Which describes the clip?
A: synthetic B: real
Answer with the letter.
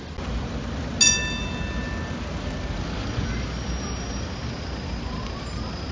B